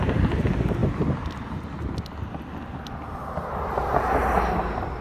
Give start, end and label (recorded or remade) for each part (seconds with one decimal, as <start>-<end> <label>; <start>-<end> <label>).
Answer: 0.0-5.0 recorded